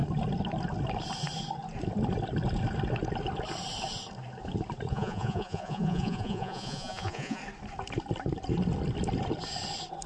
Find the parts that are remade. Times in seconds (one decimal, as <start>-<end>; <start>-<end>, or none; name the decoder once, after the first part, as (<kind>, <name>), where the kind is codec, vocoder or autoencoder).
4.9-7.4 (vocoder, Vocos)